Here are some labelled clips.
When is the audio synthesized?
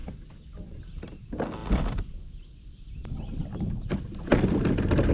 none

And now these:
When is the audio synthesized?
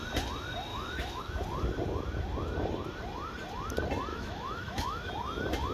0.7-1.2 (autoencoder, DAC-VAE); 4.1-5.1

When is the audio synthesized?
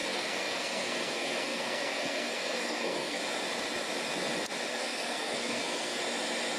0.0-3.2 (codec, SNAC); 4.7-6.0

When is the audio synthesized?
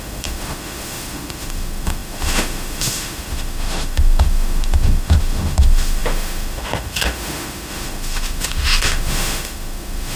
0.0-10.2 (autoencoder, DAC-VAE)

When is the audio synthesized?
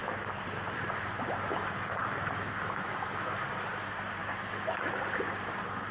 1.5-3.3 (autoencoder, DAC-VAE); 4.2-4.9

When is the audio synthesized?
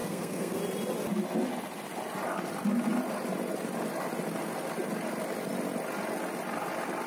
0.0-0.6 (codec, SNAC)